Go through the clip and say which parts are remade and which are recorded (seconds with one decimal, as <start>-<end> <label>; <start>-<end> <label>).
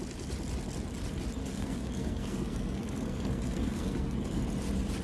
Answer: 0.0-1.4 recorded; 1.4-4.4 remade; 4.4-5.0 recorded